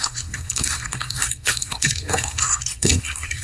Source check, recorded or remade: remade